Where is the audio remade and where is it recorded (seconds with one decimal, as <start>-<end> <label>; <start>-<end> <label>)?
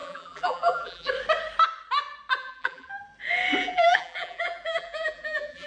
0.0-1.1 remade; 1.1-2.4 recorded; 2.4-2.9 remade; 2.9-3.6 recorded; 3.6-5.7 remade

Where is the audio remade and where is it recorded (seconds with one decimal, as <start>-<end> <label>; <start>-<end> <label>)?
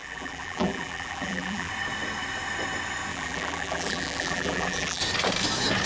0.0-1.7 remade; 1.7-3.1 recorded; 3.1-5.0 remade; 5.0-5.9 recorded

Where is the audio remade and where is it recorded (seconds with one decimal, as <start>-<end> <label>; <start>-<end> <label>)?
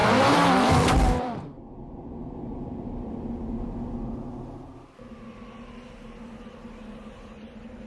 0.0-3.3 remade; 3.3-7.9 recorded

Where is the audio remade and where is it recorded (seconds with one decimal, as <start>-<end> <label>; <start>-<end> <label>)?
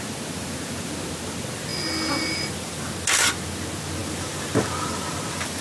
0.0-1.7 recorded; 1.7-2.9 remade; 2.9-4.0 recorded; 4.0-5.6 remade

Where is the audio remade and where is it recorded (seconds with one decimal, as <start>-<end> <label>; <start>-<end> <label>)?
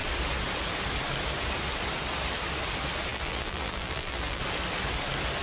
0.0-3.1 recorded; 3.1-4.4 remade; 4.4-5.4 recorded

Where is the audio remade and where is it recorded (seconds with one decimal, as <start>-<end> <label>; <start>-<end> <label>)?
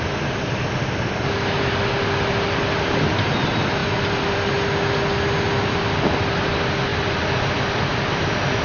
0.0-6.9 recorded; 6.9-7.9 remade; 7.9-8.6 recorded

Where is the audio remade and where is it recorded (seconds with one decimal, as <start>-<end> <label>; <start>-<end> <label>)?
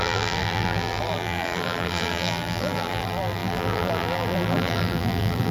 0.0-5.5 remade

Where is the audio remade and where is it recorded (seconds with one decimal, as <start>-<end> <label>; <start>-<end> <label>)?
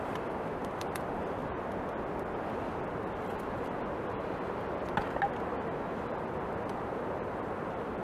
0.0-1.4 remade; 1.4-6.2 recorded; 6.2-8.0 remade